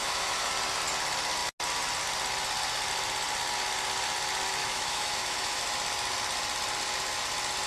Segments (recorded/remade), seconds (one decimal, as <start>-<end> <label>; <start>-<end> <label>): 0.0-0.5 remade; 0.5-4.6 recorded; 4.6-5.6 remade; 5.6-7.7 recorded